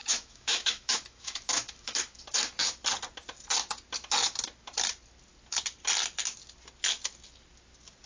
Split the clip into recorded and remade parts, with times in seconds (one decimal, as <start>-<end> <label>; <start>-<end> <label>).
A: 0.0-2.2 remade; 2.2-8.1 recorded

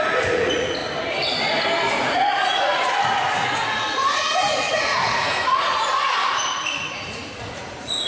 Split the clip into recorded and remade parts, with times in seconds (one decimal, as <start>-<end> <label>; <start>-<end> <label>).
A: 0.0-0.8 remade; 0.8-1.9 recorded; 1.9-8.1 remade

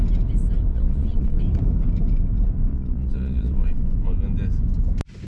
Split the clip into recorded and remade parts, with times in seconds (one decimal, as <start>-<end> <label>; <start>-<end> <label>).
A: 0.0-0.7 recorded; 0.7-1.4 remade; 1.4-2.7 recorded; 2.7-3.9 remade; 3.9-5.3 recorded

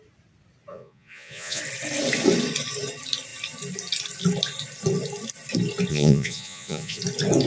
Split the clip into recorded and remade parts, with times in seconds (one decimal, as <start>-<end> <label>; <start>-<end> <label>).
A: 0.0-0.7 recorded; 0.7-1.6 remade; 1.6-5.9 recorded; 5.9-7.0 remade; 7.0-7.5 recorded

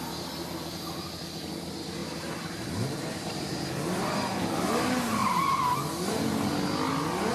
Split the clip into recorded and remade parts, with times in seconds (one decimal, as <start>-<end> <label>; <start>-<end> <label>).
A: 0.0-2.0 recorded; 2.0-3.7 remade; 3.7-7.3 recorded

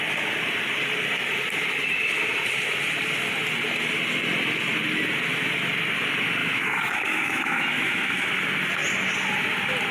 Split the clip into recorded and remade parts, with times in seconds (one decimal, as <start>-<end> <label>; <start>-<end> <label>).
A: 0.0-6.4 recorded; 6.4-8.3 remade; 8.3-9.9 recorded